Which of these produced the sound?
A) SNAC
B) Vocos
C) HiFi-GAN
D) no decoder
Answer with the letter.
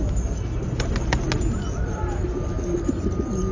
D